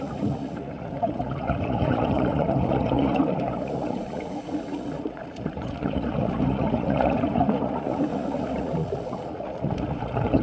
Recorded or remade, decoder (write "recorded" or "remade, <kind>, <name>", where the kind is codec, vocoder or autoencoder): remade, vocoder, Vocos